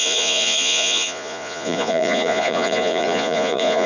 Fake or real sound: fake